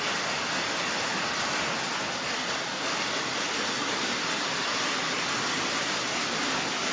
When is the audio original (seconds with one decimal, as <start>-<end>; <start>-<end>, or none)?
0.0-6.9